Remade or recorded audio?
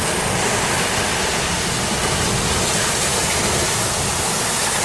recorded